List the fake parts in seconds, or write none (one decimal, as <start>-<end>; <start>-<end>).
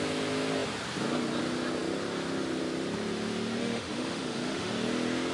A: 3.6-4.7